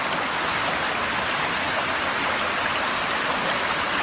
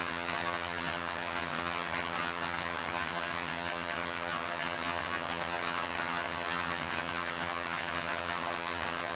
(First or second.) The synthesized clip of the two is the second